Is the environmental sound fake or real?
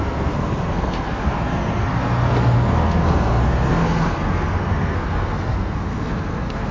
fake